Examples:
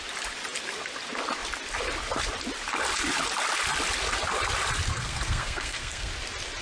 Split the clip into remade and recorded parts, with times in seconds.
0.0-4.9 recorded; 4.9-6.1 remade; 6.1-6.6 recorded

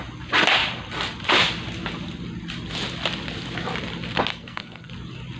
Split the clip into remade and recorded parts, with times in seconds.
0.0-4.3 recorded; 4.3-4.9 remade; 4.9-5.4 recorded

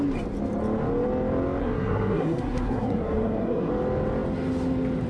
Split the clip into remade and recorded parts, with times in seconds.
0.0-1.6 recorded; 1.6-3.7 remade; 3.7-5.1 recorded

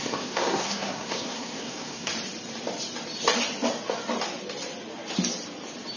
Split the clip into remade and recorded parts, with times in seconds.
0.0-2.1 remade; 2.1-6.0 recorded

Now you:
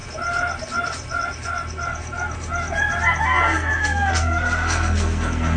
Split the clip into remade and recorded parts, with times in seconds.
0.0-3.2 recorded; 3.2-5.6 remade